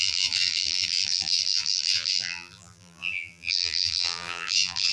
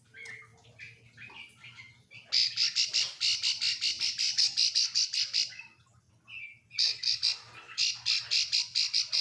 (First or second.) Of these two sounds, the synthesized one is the first